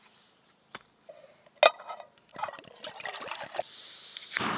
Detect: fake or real real